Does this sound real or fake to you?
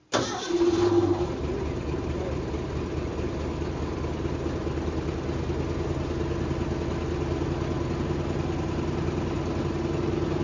real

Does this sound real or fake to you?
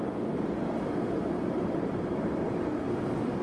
fake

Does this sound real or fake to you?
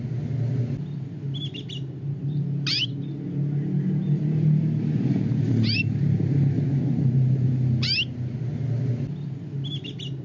real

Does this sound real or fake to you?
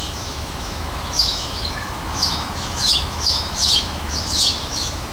fake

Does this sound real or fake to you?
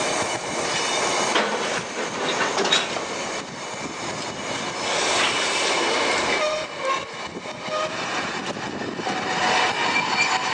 real